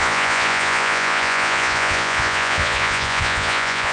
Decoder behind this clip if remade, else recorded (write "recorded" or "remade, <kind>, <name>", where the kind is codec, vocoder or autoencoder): remade, vocoder, Vocos